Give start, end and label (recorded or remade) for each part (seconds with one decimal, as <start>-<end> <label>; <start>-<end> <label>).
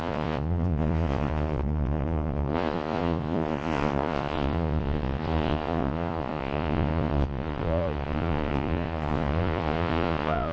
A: 0.0-10.5 remade